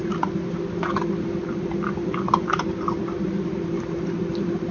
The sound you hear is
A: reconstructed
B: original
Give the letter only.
A